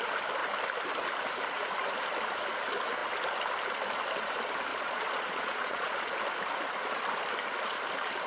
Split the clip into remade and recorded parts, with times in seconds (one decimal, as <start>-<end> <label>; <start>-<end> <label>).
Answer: 0.0-4.7 recorded; 4.7-6.1 remade; 6.1-8.3 recorded